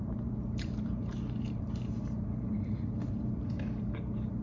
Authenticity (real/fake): fake